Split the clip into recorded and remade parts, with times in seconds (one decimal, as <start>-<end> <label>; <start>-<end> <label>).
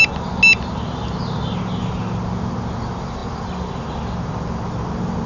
0.0-5.3 recorded